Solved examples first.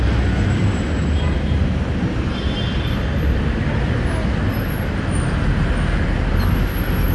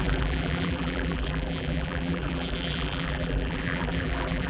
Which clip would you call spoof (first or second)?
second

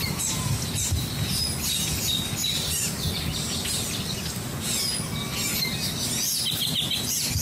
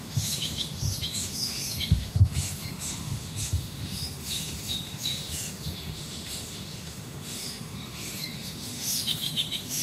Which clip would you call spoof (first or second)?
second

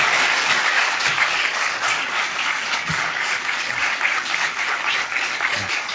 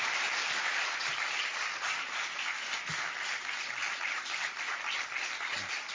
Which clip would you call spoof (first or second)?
first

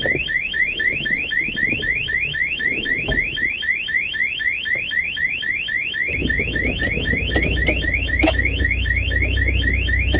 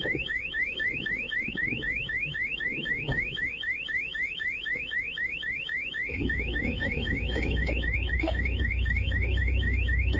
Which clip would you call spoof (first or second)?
second